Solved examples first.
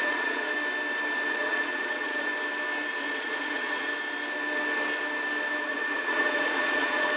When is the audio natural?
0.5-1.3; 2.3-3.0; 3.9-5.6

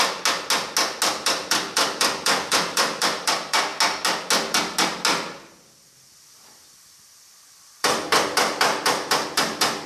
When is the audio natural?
0.0-1.1; 3.7-7.6

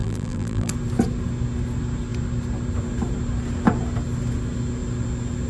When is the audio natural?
0.7-5.5